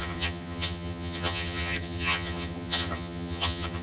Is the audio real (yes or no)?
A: no